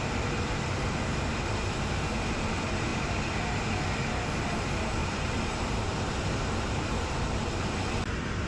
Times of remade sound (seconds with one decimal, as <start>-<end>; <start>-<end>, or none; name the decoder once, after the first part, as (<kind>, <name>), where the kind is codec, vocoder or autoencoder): 5.0-7.7 (vocoder, BigVGAN v2)